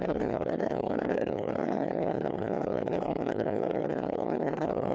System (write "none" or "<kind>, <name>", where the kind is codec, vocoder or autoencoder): codec, SNAC